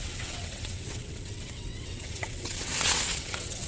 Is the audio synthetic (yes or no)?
yes